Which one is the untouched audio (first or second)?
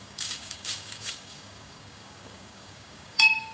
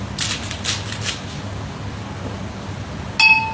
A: second